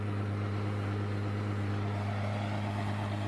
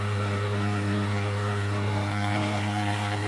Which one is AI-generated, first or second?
second